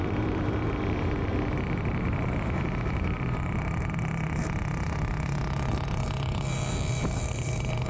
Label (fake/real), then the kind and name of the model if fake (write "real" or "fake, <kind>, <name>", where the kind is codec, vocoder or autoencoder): fake, vocoder, BigVGAN v2